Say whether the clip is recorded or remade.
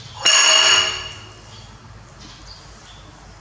recorded